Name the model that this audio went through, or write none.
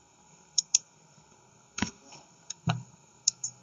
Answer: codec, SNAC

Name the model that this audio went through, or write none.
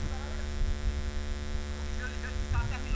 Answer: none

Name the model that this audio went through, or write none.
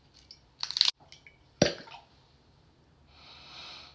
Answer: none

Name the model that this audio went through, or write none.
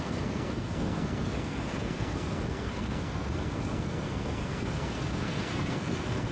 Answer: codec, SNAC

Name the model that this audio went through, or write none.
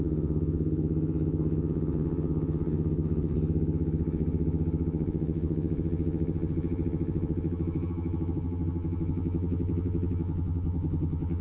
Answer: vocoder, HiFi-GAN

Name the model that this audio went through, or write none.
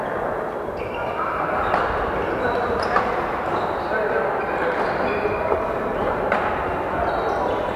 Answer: none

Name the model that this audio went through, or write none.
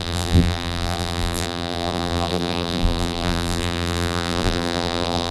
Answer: vocoder, BigVGAN v2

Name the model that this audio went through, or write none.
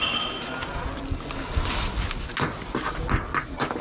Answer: none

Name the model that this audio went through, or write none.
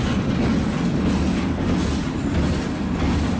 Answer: none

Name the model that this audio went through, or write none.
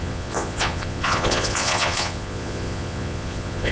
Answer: vocoder, Vocos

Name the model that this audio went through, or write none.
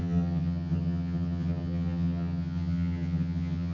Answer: vocoder, HiFi-GAN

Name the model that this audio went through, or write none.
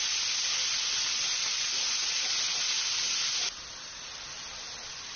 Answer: none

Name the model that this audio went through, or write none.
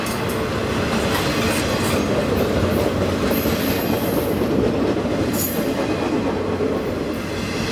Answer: none